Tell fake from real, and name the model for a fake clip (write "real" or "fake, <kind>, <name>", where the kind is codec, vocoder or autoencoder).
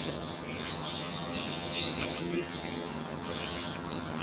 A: fake, vocoder, HiFi-GAN